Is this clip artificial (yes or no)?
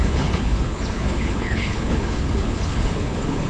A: yes